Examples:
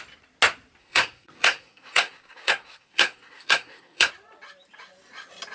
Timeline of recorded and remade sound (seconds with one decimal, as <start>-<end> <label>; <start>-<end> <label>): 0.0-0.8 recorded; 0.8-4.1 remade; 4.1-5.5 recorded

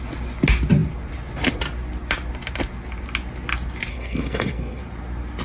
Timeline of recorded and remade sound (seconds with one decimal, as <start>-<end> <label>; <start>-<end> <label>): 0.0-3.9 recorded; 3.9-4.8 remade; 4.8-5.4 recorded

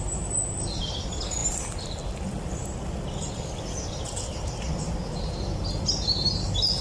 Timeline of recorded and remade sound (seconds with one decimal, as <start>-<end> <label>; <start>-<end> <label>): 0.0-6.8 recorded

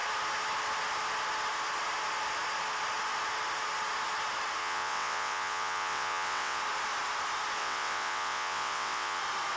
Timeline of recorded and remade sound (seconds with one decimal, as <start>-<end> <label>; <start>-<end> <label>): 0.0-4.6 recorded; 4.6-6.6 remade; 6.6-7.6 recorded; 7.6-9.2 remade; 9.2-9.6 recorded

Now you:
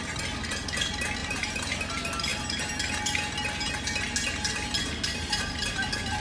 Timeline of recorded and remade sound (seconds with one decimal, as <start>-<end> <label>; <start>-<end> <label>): 0.0-1.2 recorded; 1.2-1.9 remade; 1.9-6.2 recorded

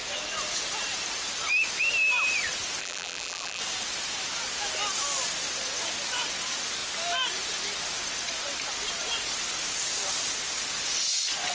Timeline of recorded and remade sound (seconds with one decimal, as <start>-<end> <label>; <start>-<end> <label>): 0.0-2.8 recorded; 2.8-3.6 remade; 3.6-11.5 recorded

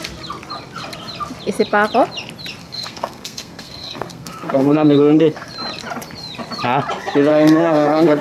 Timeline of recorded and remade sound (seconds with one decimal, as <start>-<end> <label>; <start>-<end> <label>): 0.0-2.6 recorded; 2.6-5.5 remade; 5.5-7.3 recorded; 7.3-8.2 remade

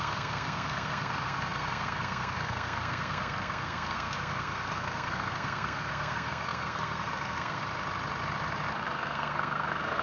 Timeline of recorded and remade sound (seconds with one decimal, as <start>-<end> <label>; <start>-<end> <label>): 0.0-7.6 remade; 7.6-8.8 recorded; 8.8-10.0 remade